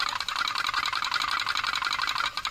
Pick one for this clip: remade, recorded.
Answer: recorded